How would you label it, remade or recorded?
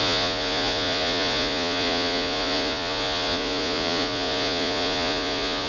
remade